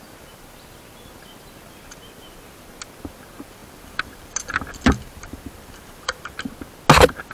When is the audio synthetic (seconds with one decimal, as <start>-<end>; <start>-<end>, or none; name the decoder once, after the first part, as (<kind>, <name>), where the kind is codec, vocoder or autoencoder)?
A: 3.6-6.4 (vocoder, BigVGAN v2)